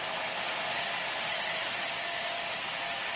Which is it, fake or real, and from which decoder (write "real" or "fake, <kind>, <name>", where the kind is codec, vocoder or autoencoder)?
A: real